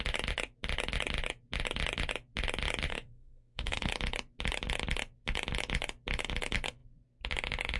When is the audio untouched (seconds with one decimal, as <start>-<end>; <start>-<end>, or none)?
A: 0.0-2.9; 3.9-7.8